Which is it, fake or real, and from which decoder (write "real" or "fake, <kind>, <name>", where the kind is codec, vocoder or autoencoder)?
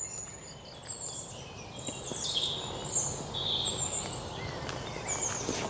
real